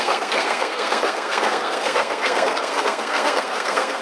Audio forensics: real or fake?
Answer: fake